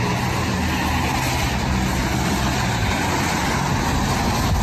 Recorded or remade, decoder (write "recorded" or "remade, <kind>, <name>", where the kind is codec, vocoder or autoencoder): recorded